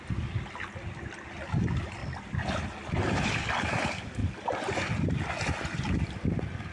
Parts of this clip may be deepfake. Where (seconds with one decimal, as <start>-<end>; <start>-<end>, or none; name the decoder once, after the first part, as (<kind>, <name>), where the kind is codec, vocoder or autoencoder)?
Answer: none